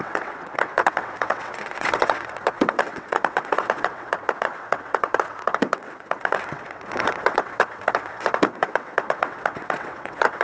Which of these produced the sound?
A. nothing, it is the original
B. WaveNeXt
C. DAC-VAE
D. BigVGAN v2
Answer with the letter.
B